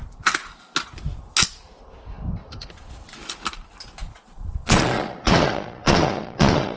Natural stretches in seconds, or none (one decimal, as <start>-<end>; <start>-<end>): 0.0-4.0